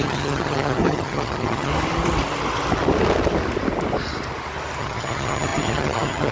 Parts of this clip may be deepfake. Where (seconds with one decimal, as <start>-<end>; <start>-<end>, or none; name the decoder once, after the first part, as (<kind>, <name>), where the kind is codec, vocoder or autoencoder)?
0.0-1.7 (vocoder, HiFi-GAN); 4.8-6.3